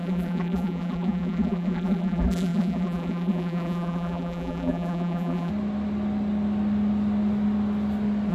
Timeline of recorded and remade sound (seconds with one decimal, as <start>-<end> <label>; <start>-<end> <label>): 0.0-5.5 remade; 5.5-8.3 recorded